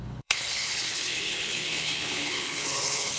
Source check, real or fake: fake